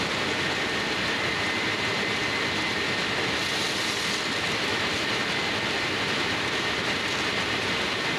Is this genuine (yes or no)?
yes